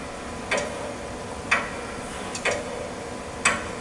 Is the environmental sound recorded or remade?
recorded